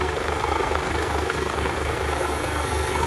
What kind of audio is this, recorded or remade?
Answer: remade